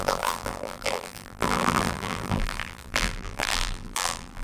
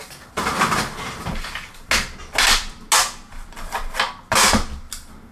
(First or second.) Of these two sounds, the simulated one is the first